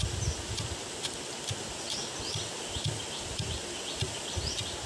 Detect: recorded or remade recorded